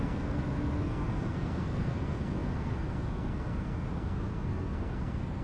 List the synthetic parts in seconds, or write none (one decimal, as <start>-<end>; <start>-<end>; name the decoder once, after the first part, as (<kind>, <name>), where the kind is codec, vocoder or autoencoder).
0.0-5.4 (codec, SNAC)